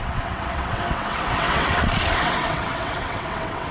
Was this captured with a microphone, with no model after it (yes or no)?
no